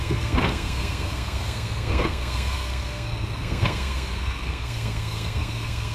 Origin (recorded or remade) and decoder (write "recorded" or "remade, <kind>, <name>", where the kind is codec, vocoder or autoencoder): remade, codec, SNAC